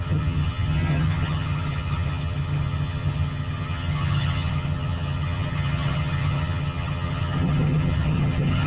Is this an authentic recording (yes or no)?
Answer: no